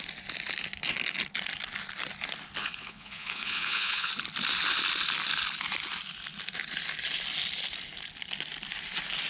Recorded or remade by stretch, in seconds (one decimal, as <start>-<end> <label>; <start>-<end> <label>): 0.0-2.6 recorded; 2.6-4.1 remade; 4.1-9.3 recorded